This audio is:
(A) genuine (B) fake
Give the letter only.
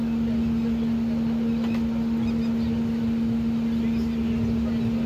A